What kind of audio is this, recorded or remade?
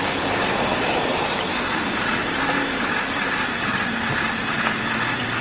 recorded